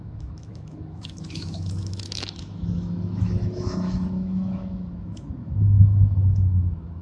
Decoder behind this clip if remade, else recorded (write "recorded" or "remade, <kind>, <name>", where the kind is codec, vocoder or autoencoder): remade, autoencoder, DAC-VAE